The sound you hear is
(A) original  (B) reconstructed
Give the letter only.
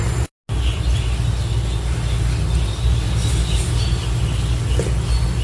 A